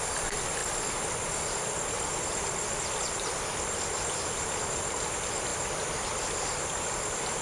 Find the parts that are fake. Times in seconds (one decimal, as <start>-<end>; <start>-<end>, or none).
none